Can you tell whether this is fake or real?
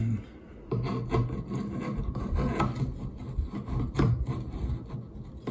real